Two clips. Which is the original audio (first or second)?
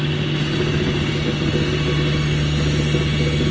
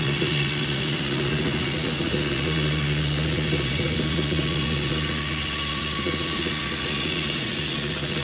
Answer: first